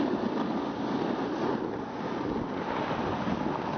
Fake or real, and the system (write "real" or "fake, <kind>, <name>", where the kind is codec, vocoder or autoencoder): real